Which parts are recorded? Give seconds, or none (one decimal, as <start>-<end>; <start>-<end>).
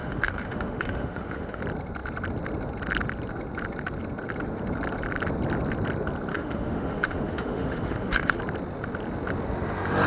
1.6-6.3; 8.4-10.1